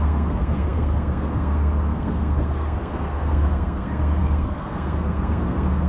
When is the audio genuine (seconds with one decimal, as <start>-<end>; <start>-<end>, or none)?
none